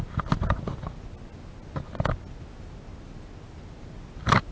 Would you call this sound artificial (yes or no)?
no